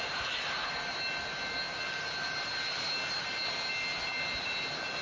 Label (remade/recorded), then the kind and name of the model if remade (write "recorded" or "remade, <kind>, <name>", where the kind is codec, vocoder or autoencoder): recorded